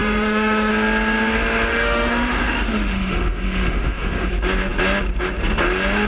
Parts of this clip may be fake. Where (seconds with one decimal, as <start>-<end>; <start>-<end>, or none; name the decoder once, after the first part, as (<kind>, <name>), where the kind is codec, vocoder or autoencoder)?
0.0-0.7 (autoencoder, DAC-VAE); 1.7-4.3